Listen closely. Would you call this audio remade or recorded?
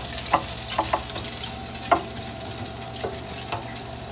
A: recorded